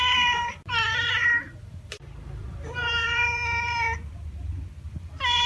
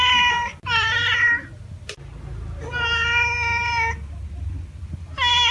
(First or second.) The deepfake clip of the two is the first